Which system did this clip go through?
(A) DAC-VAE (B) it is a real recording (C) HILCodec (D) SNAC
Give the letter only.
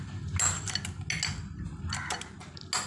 B